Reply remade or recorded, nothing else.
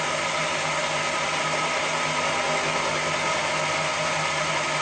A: recorded